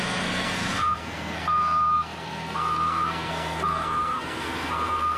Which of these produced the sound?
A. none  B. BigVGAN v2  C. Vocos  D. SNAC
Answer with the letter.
D